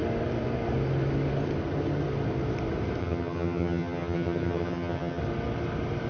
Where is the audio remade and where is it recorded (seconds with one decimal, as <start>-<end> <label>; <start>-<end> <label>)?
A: 0.0-3.0 recorded; 3.0-5.2 remade; 5.2-6.1 recorded